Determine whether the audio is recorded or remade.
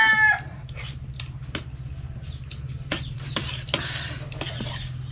recorded